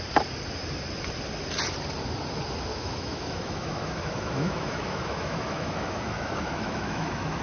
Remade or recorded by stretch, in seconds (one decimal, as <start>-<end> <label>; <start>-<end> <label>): 0.0-2.7 recorded; 2.7-7.4 remade

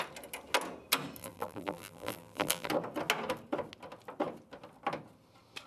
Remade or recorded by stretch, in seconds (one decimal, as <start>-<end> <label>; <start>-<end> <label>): 0.0-1.2 recorded; 1.2-2.7 remade; 2.7-5.7 recorded

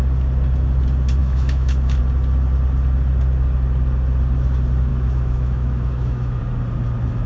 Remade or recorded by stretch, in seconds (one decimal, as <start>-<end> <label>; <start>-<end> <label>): 0.0-1.2 recorded; 1.2-2.0 remade; 2.0-4.9 recorded; 4.9-6.4 remade; 6.4-7.3 recorded

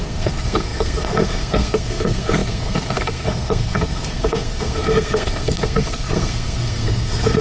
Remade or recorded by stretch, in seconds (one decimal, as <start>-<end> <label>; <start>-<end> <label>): 0.0-7.4 remade

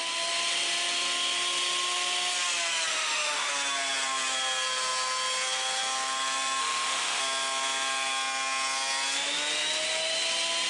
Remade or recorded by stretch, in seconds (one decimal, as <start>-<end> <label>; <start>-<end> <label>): 0.0-2.9 recorded; 2.9-3.5 remade; 3.5-6.6 recorded; 6.6-7.2 remade; 7.2-10.7 recorded

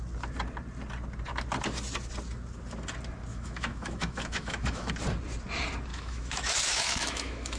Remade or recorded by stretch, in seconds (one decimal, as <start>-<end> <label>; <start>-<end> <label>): 0.0-3.3 recorded; 3.3-4.9 remade; 4.9-5.9 recorded; 5.9-7.6 remade

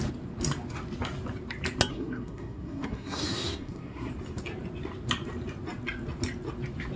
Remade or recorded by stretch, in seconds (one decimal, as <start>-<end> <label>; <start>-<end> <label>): 0.0-1.9 recorded; 1.9-4.1 remade; 4.1-7.0 recorded